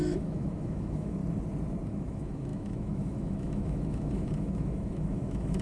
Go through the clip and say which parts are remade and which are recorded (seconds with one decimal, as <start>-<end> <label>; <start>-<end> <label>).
0.0-1.2 remade; 1.2-1.9 recorded; 1.9-5.6 remade